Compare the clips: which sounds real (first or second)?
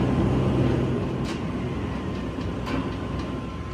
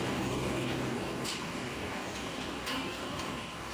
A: first